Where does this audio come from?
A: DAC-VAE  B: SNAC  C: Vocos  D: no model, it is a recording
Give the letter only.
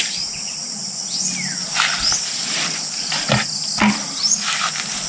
D